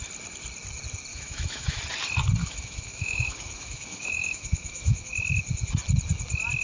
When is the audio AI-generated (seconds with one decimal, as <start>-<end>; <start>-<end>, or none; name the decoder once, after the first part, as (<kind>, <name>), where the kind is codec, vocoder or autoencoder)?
1.1-1.8 (autoencoder, DAC-VAE); 2.4-5.1